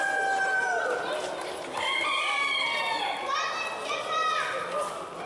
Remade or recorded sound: recorded